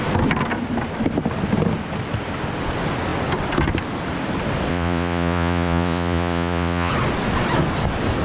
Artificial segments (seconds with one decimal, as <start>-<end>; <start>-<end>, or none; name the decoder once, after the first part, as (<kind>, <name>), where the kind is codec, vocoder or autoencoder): 4.7-6.9 (vocoder, Vocos)